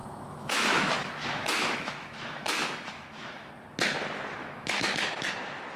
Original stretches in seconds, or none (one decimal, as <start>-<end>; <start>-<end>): 3.5-4.4; 5.3-5.8